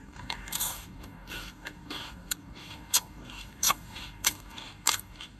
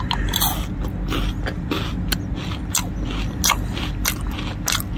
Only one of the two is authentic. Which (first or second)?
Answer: second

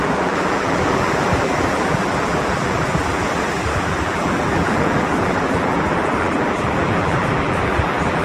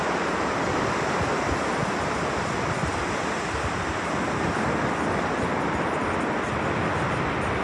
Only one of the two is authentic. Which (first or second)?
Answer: second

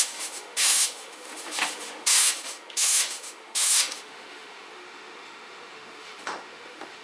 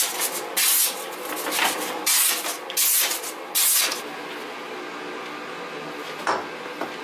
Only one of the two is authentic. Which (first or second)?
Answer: second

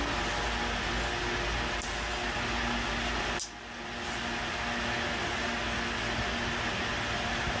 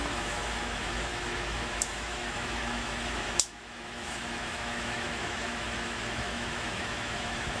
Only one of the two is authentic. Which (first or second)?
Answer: first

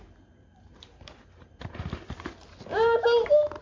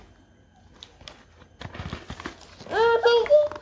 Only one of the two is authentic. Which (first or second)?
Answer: second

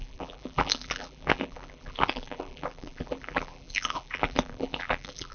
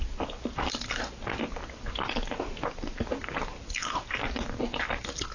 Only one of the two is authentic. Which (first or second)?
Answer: second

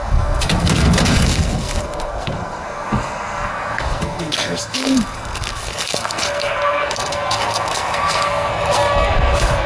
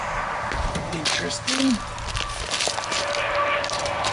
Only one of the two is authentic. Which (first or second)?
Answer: second